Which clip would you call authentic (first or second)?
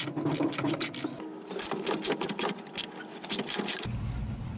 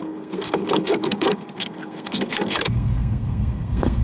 first